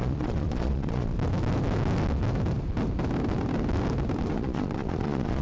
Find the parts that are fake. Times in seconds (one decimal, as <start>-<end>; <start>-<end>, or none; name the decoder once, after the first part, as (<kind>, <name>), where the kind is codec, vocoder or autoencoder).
0.0-1.1 (vocoder, Vocos); 4.3-5.4